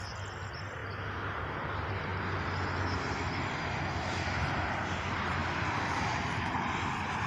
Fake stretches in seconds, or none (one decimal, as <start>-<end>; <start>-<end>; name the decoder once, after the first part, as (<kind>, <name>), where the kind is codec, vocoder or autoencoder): none